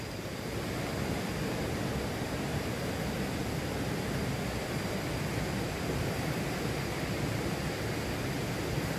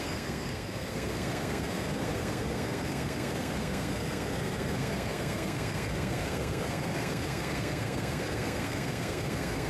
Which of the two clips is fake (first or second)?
second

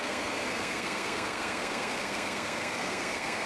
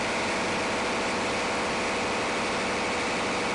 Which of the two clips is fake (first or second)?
first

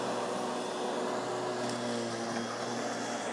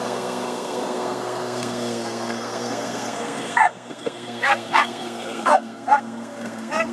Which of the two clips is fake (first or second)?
second